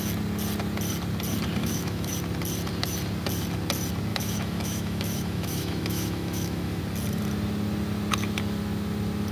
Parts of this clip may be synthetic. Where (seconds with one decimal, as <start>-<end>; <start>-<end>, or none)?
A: 1.6-2.1; 4.1-6.8